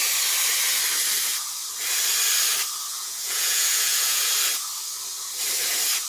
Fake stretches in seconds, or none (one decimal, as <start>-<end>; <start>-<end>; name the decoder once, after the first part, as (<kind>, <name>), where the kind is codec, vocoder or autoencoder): 2.9-4.3 (vocoder, Vocos)